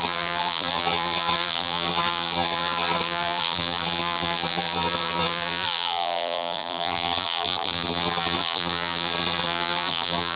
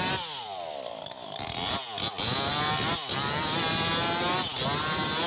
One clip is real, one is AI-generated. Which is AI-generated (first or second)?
first